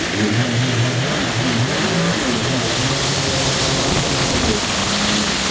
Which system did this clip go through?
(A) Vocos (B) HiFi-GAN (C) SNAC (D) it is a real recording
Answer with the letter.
D